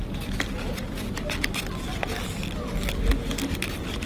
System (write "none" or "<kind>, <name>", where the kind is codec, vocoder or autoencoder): none